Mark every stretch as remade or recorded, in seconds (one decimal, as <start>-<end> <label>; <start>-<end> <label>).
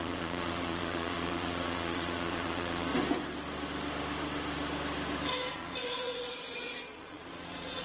0.0-2.9 remade; 2.9-5.5 recorded; 5.5-7.8 remade